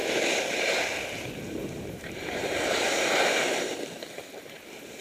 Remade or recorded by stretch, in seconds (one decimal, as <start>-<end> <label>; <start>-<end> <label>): 0.0-1.6 recorded; 1.6-3.7 remade; 3.7-5.0 recorded